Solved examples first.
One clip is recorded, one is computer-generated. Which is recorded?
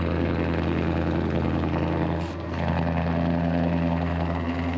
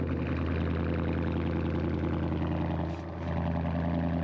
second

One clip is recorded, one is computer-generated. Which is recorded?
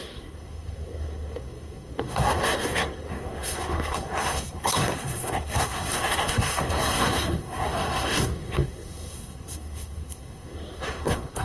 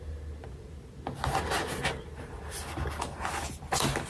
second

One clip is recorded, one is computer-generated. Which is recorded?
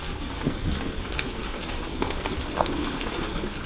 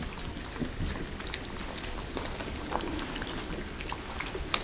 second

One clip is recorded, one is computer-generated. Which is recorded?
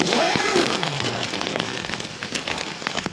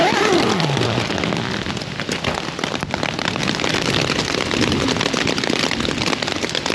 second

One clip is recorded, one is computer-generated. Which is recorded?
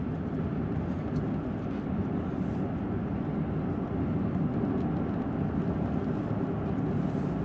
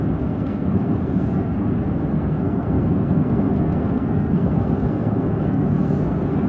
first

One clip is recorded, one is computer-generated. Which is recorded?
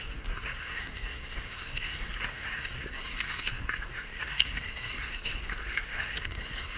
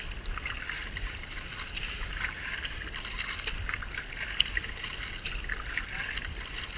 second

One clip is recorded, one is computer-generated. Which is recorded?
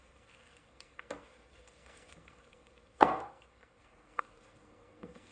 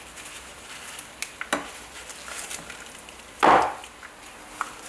second